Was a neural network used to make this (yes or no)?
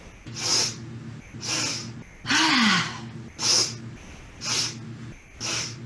no